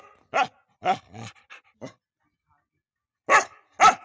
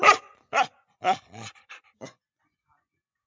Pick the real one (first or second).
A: first